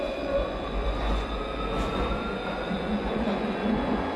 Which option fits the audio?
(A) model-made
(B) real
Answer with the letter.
A